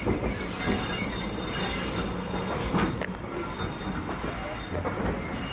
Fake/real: real